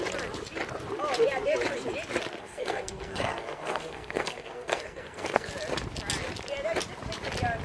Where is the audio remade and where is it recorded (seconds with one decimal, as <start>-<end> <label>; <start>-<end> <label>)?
0.0-2.4 recorded; 2.4-5.5 remade; 5.5-7.6 recorded